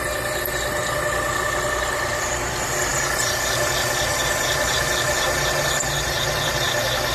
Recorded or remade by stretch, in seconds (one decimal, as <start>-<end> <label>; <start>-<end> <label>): 0.0-7.1 recorded